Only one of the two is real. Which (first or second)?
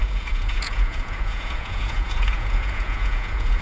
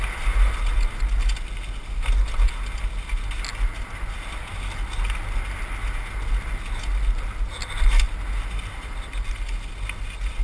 second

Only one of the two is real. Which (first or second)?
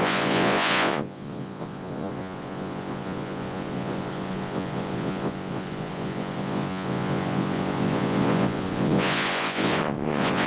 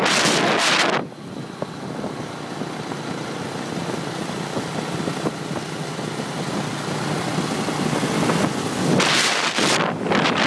second